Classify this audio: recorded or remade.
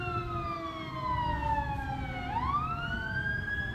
recorded